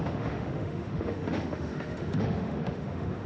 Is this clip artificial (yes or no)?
yes